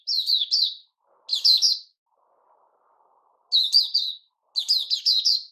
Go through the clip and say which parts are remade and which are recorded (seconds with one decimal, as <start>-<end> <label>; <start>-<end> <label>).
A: 0.0-5.5 recorded